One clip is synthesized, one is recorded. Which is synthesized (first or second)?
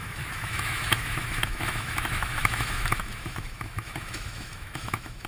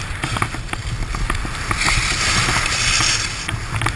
first